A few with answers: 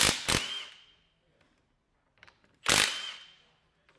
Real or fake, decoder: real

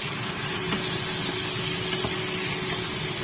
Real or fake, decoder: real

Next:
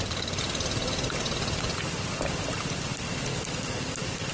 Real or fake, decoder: real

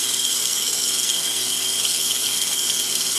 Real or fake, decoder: fake, codec, SNAC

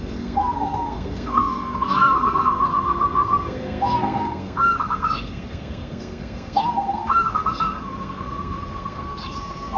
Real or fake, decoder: fake, codec, SNAC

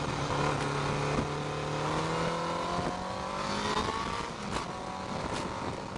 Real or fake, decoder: real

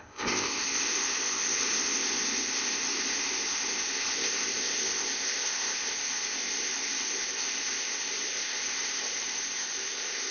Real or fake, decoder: fake, codec, ZipCodec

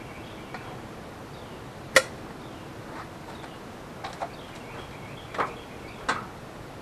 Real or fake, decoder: real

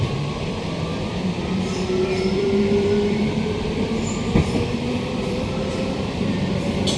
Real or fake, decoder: fake, vocoder, BigVGAN v2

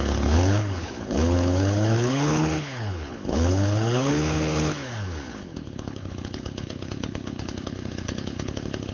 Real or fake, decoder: fake, codec, HILCodec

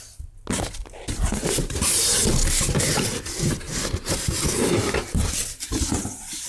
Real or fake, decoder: real